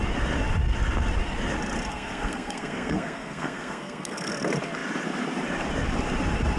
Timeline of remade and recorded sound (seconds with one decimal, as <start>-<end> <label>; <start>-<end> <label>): 0.0-1.9 recorded; 1.9-4.3 remade; 4.3-6.6 recorded